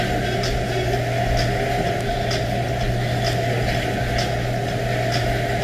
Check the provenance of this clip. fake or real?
real